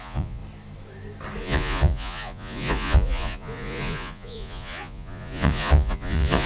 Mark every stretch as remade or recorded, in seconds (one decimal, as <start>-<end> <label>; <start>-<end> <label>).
0.0-0.4 remade; 0.4-1.4 recorded; 1.4-6.5 remade